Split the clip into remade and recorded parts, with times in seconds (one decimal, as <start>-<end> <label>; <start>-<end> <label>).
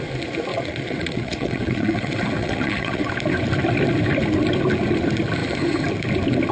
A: 0.0-0.5 recorded; 0.5-3.1 remade; 3.1-6.5 recorded